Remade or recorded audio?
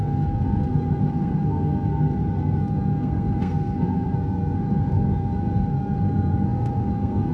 remade